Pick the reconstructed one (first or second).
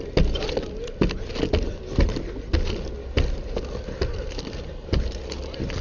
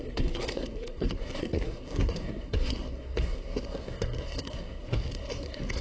second